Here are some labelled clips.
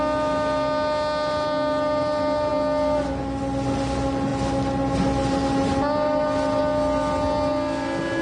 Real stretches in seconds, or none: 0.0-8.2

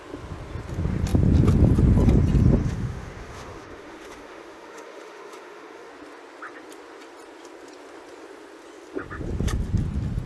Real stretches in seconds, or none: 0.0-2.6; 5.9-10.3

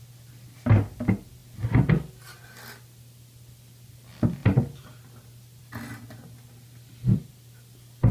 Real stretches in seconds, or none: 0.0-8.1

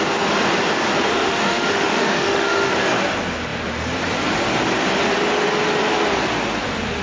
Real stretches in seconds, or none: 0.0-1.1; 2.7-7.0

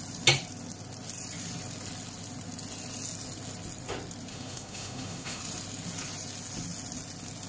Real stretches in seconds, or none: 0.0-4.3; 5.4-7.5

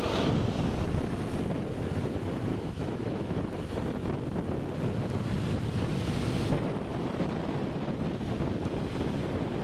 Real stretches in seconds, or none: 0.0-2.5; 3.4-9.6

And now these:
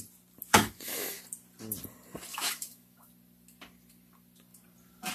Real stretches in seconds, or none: 0.0-0.5; 1.2-2.3; 3.1-5.1

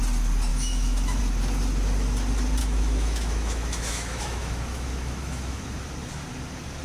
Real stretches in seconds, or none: 0.0-0.5; 1.2-2.6; 5.6-6.8